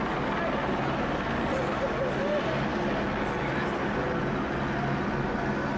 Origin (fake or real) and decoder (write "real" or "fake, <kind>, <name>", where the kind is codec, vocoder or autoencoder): real